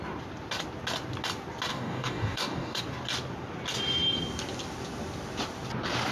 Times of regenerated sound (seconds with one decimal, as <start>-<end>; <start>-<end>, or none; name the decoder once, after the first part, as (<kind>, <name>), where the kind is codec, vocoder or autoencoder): 1.7-2.8 (codec, DAC)

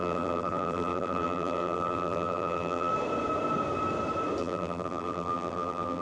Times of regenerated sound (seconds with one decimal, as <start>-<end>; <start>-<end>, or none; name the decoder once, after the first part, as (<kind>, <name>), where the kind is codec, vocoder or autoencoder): 0.0-2.9 (vocoder, BigVGAN v2); 4.4-6.0

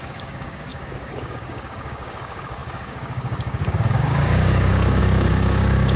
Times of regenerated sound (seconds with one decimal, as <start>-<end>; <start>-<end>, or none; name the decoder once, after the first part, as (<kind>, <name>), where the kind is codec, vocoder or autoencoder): 0.0-6.0 (codec, DAC)